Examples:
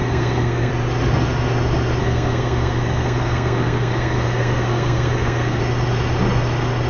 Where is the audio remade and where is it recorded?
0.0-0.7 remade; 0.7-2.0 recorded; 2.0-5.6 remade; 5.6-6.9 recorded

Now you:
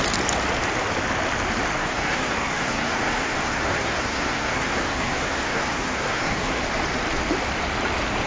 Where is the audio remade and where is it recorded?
0.0-1.8 recorded; 1.8-6.6 remade; 6.6-8.3 recorded

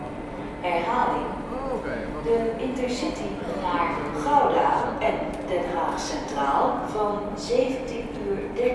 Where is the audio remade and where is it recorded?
0.0-8.7 recorded

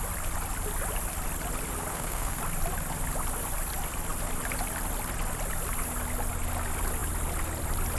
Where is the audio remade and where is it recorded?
0.0-1.9 recorded; 1.9-2.4 remade; 2.4-8.0 recorded

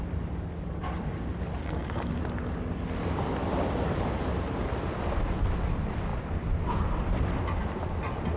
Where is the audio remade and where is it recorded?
0.0-1.6 recorded; 1.6-2.2 remade; 2.2-8.4 recorded

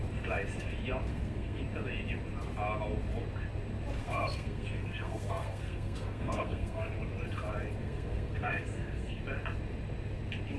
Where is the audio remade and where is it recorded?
0.0-1.1 recorded; 1.1-1.6 remade; 1.6-4.0 recorded; 4.0-6.9 remade; 6.9-7.8 recorded; 7.8-9.2 remade; 9.2-10.6 recorded